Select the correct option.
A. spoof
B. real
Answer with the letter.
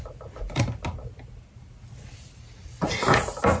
B